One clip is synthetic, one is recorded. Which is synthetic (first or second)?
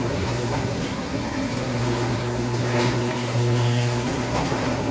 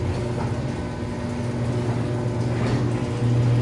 first